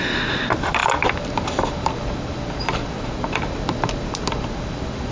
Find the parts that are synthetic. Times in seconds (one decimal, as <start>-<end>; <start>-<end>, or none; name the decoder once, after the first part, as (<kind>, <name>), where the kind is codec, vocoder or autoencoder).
none